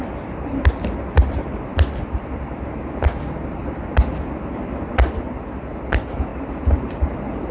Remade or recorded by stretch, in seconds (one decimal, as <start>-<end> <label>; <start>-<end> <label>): 0.0-6.3 recorded; 6.3-7.1 remade; 7.1-7.5 recorded